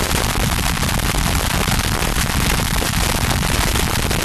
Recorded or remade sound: recorded